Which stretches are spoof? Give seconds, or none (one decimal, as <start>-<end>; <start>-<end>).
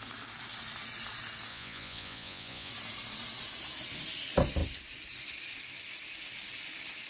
1.5-2.7